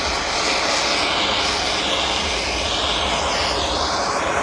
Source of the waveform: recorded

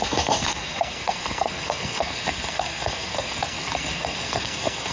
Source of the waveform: remade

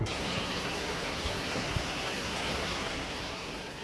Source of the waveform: remade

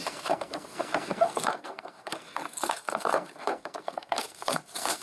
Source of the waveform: remade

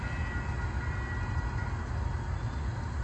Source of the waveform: recorded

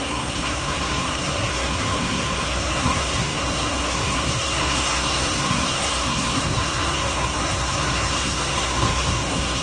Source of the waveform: remade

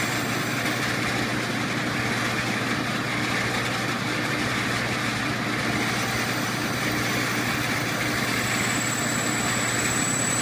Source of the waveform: recorded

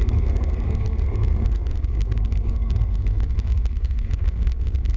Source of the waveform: remade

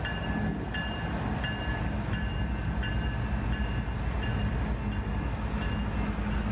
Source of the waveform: recorded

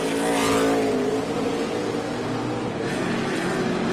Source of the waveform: recorded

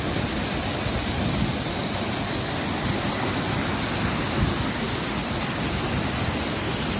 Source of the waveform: recorded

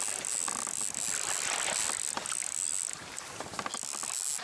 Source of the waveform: recorded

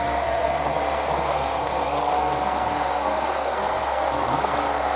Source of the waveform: remade